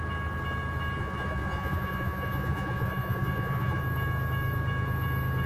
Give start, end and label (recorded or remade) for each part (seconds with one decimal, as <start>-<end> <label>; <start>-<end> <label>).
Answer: 0.0-1.0 recorded; 1.0-3.8 remade; 3.8-5.5 recorded

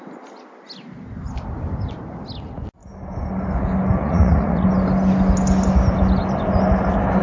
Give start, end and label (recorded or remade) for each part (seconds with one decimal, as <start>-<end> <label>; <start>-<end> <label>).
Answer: 0.0-4.0 recorded; 4.0-4.7 remade; 4.7-7.2 recorded

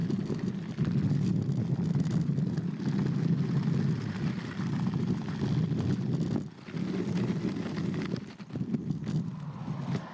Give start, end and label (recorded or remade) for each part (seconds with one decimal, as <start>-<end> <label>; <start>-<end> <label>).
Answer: 0.0-10.1 recorded

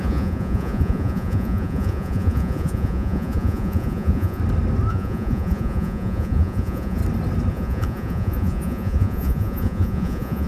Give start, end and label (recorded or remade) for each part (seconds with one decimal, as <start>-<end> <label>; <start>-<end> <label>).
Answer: 0.0-4.4 remade; 4.4-4.9 recorded; 4.9-7.0 remade; 7.0-7.5 recorded; 7.5-10.5 remade

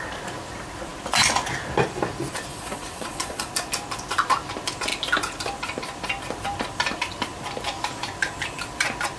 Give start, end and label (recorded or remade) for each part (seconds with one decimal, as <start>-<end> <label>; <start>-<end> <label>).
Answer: 0.0-2.5 recorded; 2.5-3.5 remade; 3.5-9.2 recorded

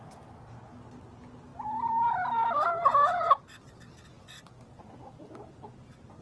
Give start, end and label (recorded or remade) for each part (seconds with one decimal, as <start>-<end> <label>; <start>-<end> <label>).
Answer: 0.0-6.2 recorded

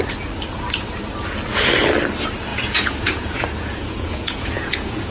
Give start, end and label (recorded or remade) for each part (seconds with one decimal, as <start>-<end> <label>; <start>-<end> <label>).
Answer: 0.0-2.5 recorded; 2.5-5.1 remade

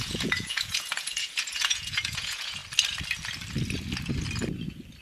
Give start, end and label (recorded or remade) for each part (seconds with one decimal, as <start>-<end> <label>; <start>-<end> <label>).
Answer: 0.0-2.6 remade; 2.6-5.0 recorded